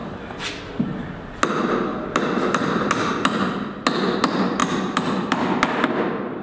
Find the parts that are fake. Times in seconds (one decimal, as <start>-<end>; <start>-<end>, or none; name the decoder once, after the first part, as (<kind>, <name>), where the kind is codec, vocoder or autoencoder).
1.9-3.1 (vocoder, BigVGAN v2); 4.6-5.5